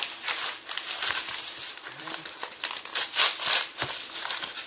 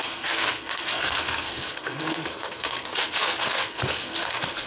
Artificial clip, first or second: second